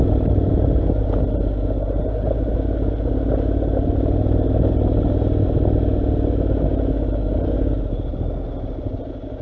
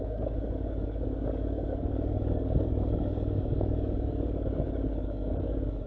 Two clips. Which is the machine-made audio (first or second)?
second